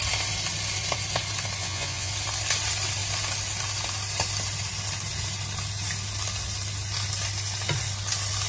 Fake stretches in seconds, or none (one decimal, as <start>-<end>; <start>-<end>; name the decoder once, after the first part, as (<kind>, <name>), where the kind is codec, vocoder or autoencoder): 1.6-2.1 (vocoder, Vocos)